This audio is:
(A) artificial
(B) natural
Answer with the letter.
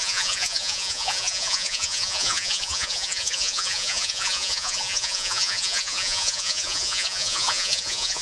A